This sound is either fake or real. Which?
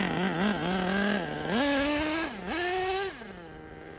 real